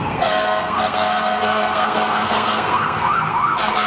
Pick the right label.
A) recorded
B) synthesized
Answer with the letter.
B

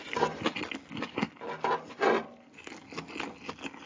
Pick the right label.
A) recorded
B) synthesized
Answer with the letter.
A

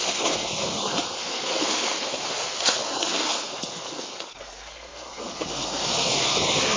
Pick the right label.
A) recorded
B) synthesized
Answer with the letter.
B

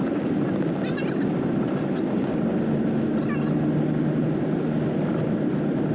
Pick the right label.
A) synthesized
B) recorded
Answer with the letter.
B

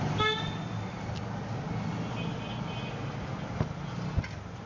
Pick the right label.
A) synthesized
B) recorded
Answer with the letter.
B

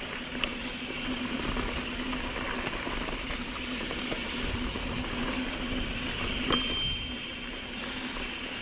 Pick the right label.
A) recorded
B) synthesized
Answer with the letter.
A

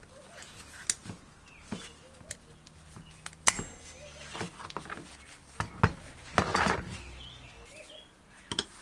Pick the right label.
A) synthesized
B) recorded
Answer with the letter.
B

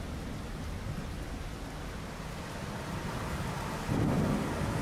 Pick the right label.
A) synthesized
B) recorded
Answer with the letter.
B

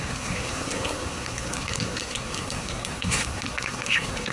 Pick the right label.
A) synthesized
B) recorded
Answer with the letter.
A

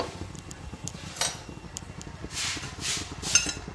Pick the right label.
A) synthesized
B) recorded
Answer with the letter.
B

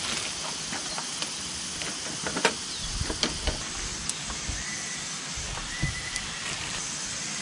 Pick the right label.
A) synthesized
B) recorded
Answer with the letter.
B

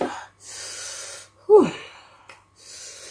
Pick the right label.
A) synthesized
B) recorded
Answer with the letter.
B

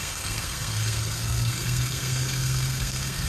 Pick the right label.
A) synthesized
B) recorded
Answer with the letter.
A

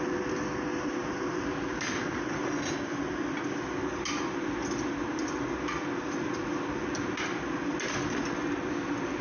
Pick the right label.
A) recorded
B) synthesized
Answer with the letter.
A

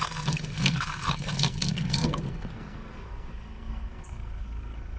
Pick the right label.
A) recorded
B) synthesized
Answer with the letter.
B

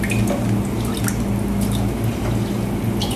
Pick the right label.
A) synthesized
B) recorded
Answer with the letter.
B